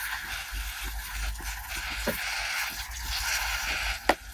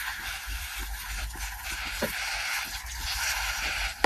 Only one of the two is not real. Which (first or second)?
second